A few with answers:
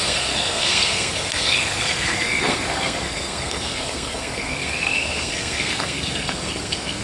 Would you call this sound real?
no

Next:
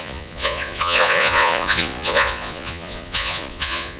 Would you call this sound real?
no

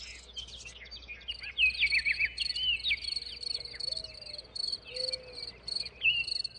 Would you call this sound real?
yes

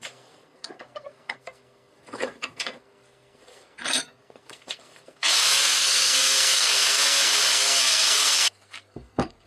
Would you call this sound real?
no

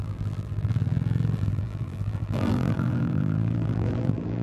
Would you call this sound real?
no